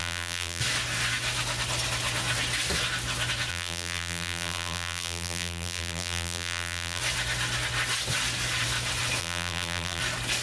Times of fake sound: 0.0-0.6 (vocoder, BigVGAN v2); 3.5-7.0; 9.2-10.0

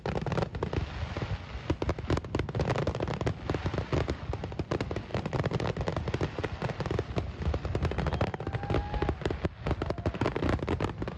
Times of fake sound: 5.1-5.9 (vocoder, BigVGAN v2)

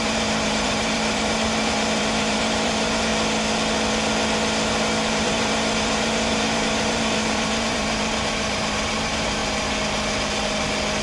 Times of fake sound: 0.0-3.1 (vocoder, BigVGAN v2); 5.1-9.4

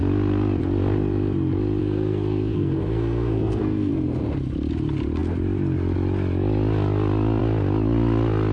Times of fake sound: 1.8-3.9 (codec, SNAC)

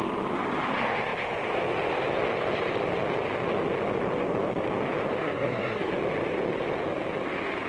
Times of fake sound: 5.2-5.9 (codec, SNAC)